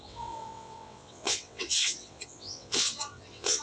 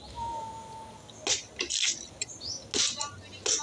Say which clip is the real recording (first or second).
second